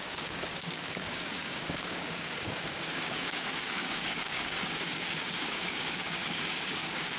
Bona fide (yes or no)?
no